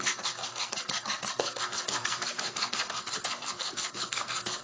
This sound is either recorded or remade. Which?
remade